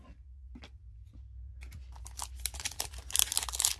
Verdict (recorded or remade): recorded